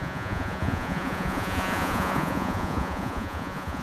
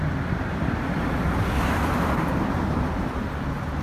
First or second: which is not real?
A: first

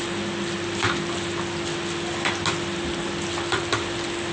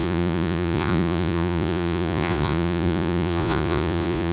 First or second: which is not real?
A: second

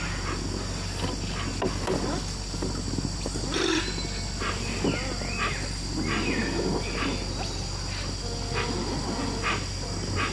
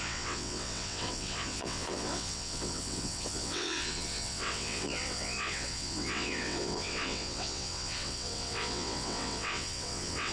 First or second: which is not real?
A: second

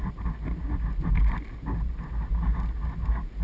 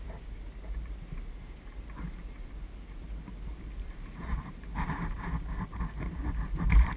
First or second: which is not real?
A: second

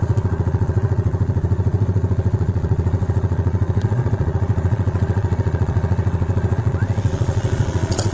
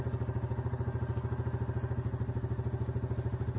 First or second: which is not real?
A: first